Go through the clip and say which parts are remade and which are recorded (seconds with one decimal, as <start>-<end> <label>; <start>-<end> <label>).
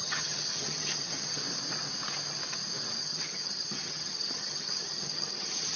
0.0-1.4 remade; 1.4-3.0 recorded; 3.0-5.8 remade